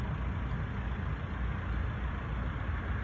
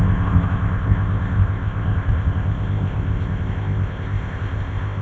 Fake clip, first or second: second